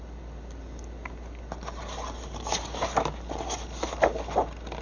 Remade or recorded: recorded